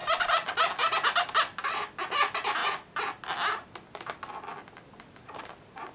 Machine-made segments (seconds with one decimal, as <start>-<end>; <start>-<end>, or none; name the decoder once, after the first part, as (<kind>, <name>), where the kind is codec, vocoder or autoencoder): 0.0-0.5 (vocoder, BigVGAN v2)

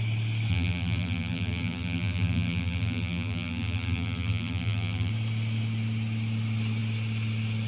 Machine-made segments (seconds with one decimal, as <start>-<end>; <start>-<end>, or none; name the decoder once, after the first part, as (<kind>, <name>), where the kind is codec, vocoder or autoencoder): 0.5-5.1 (vocoder, BigVGAN v2)